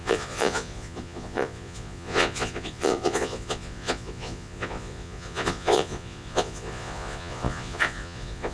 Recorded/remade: remade